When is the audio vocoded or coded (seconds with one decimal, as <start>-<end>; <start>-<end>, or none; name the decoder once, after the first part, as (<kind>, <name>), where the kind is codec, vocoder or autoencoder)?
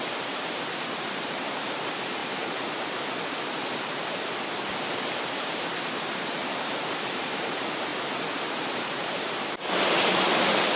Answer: 0.0-2.2 (vocoder, BigVGAN v2); 4.9-7.9; 8.8-10.8